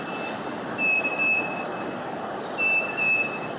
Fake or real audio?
real